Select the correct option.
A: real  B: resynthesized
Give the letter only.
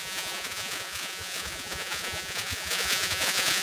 B